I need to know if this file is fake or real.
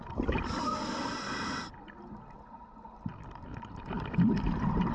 real